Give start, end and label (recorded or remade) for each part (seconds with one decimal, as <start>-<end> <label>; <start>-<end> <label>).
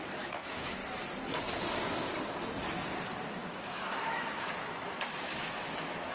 0.0-0.8 remade; 0.8-3.3 recorded; 3.3-6.1 remade